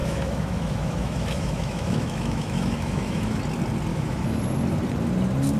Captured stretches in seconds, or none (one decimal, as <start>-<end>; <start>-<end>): 3.4-3.9; 4.4-5.6